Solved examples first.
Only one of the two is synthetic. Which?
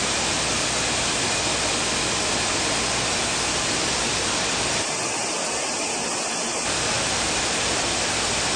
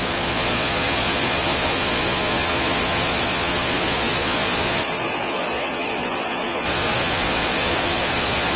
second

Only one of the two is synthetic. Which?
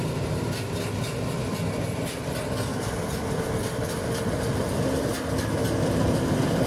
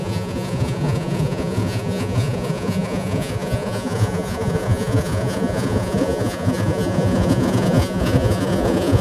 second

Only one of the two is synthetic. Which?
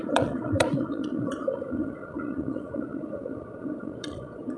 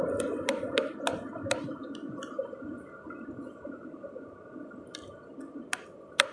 first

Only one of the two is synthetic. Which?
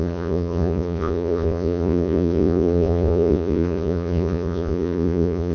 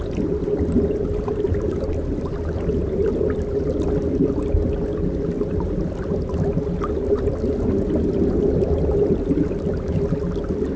first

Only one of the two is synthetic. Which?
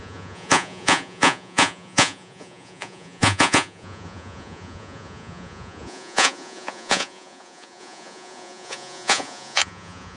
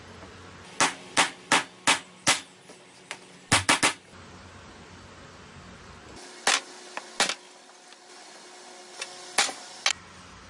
first